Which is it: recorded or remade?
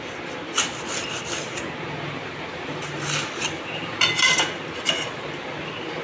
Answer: recorded